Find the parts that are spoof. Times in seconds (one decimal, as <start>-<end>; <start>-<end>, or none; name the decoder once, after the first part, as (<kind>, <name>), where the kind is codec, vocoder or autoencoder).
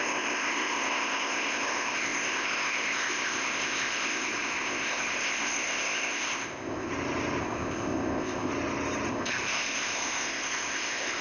0.0-6.9 (codec, ZipCodec); 7.4-8.5; 9.1-11.2